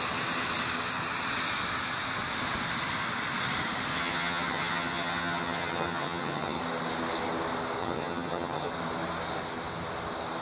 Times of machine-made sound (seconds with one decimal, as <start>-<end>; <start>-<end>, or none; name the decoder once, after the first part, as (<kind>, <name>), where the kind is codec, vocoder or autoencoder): 3.9-6.6 (vocoder, HiFi-GAN); 7.8-8.7

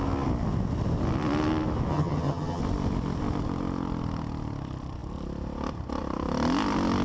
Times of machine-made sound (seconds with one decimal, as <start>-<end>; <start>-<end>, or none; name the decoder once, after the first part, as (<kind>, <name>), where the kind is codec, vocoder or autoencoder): 1.9-2.6 (vocoder, HiFi-GAN)

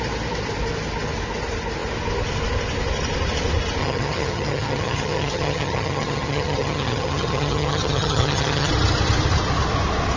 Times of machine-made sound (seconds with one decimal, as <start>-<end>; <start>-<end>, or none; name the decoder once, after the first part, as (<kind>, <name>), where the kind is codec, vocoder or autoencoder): 3.8-8.7 (vocoder, HiFi-GAN)